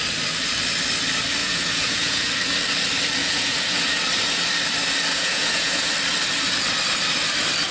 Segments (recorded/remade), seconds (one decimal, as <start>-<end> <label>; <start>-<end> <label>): 0.0-1.4 recorded; 1.4-2.3 remade; 2.3-3.2 recorded; 3.2-4.0 remade; 4.0-5.1 recorded; 5.1-5.9 remade; 5.9-7.7 recorded